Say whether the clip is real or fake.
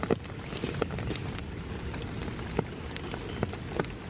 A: real